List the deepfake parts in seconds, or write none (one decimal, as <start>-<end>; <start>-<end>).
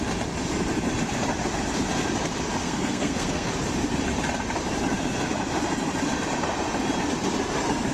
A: 2.6-3.5